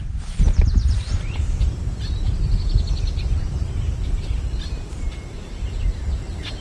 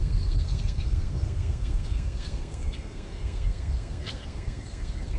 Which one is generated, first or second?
second